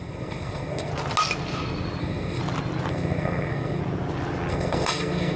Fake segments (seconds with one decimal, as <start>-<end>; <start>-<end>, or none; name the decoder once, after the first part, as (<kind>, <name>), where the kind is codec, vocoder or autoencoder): 0.0-0.9 (codec, SNAC); 2.0-2.4; 2.9-3.8; 4.5-5.4